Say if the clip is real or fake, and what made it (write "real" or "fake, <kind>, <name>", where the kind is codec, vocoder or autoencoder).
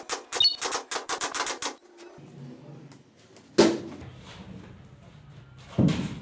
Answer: real